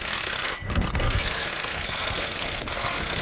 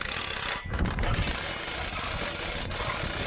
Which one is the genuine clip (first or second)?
second